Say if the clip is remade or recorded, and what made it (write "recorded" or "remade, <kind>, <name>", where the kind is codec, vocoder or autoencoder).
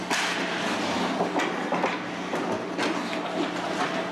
recorded